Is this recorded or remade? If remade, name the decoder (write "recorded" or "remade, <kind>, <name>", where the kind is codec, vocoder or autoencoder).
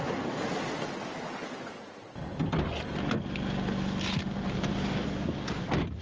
recorded